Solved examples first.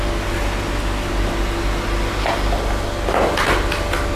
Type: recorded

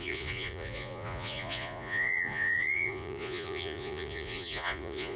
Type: remade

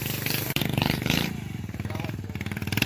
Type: remade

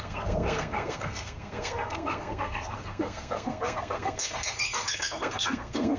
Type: remade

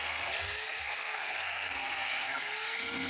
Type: remade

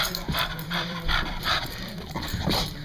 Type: remade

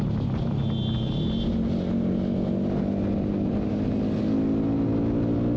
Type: recorded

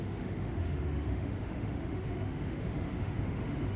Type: remade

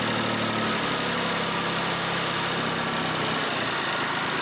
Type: recorded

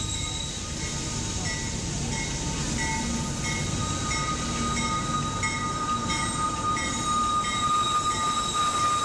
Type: recorded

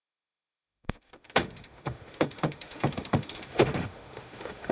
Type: remade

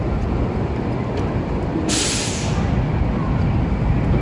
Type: recorded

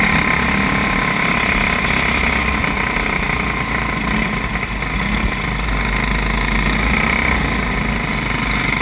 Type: recorded